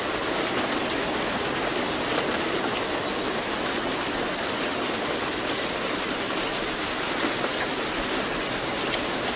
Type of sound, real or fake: real